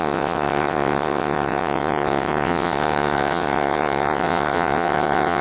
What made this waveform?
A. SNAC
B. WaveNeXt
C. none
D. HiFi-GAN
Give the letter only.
B